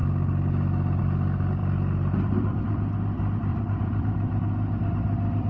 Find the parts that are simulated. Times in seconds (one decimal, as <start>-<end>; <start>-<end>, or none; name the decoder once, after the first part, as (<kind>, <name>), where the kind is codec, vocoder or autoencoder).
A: 1.6-2.6 (vocoder, BigVGAN v2); 3.5-4.1